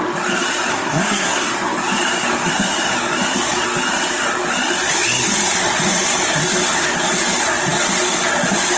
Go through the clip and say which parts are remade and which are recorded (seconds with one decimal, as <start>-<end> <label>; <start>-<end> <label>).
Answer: 0.0-0.7 recorded; 0.7-1.5 remade; 1.5-8.8 recorded